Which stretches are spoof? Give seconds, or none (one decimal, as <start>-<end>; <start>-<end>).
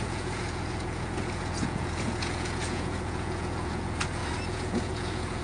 0.0-5.4